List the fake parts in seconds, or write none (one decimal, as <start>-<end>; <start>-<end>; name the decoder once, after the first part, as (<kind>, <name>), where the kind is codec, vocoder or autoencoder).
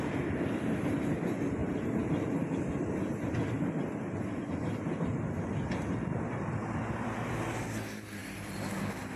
none